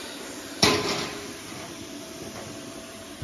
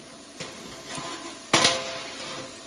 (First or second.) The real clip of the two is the second